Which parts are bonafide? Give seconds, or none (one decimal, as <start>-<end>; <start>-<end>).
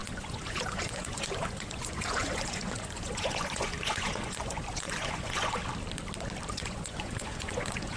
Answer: 5.6-6.5